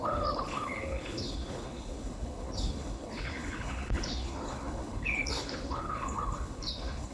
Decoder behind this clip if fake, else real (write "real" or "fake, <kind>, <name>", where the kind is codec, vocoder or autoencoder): fake, codec, HILCodec